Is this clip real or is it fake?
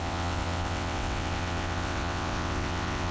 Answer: fake